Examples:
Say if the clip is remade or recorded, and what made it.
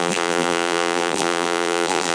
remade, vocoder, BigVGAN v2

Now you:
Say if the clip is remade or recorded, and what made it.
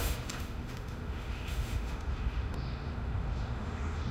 remade, autoencoder, DAC-VAE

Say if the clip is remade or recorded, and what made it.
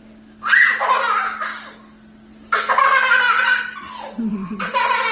recorded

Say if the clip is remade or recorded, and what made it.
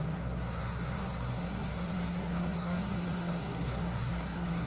remade, codec, SNAC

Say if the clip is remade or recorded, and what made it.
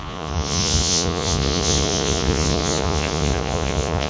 remade, vocoder, Vocos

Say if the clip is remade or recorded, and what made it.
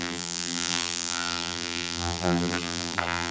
remade, vocoder, BigVGAN v2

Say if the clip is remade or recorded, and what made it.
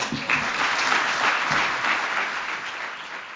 recorded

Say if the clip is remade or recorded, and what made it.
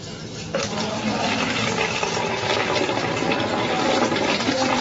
recorded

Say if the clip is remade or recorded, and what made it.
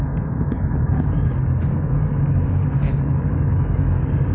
remade, codec, DAC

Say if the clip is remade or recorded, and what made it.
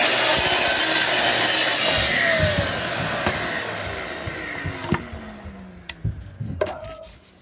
recorded